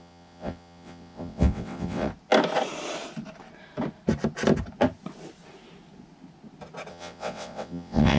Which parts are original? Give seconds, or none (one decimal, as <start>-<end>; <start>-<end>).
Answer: 2.1-6.9